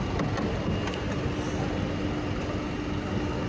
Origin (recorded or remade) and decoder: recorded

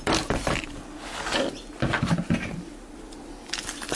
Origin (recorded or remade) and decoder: recorded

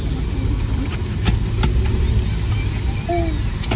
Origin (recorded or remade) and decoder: recorded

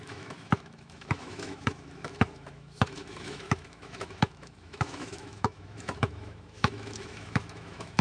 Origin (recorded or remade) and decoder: remade, autoencoder, DAC-VAE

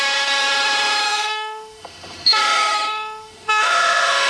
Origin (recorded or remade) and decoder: remade, autoencoder, DAC-VAE